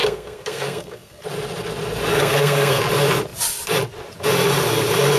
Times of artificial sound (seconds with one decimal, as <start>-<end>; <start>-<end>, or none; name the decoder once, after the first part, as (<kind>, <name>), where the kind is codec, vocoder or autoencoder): 0.0-1.2 (codec, SNAC); 2.1-2.8